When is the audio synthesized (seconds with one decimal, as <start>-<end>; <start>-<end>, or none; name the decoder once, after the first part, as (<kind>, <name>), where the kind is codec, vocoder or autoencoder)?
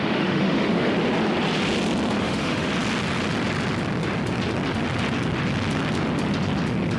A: 0.0-0.9 (autoencoder, DAC-VAE); 2.2-2.7